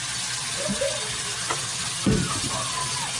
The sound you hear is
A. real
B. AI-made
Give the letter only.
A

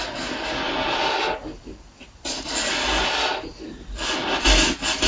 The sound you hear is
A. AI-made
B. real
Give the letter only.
B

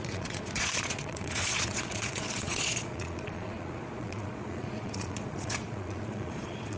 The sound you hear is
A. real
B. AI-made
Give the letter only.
B